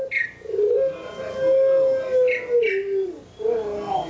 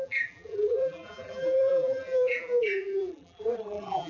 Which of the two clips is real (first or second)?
first